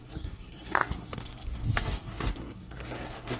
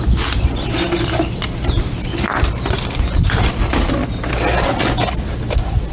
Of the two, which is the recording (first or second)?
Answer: second